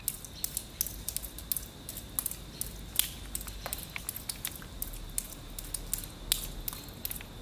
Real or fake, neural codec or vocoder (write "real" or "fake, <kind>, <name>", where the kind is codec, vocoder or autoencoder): real